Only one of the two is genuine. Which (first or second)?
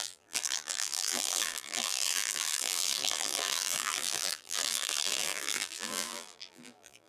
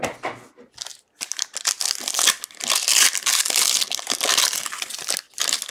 second